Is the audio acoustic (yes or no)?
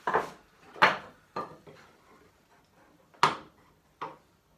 yes